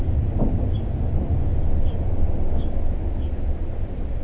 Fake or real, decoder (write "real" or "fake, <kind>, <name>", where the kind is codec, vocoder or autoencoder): real